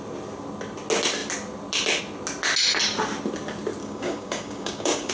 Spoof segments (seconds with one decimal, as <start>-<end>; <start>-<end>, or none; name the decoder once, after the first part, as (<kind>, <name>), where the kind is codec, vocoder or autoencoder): 3.8-5.1 (codec, DAC)